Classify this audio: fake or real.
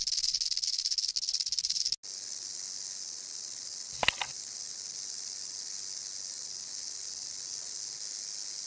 real